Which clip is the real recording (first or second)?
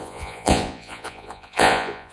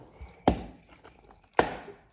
second